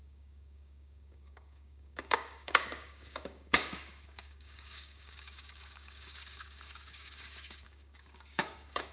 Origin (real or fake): fake